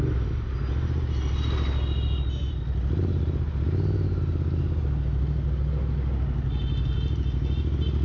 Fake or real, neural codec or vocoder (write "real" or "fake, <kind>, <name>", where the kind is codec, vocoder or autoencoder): real